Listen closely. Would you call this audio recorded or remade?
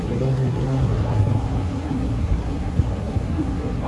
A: remade